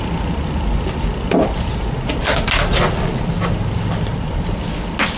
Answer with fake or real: real